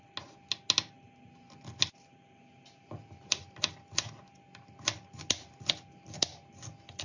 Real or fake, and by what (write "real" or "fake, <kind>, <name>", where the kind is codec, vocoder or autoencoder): real